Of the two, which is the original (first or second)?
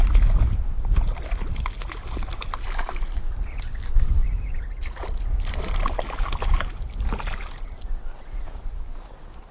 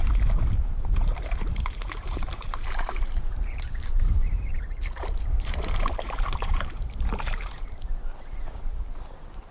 first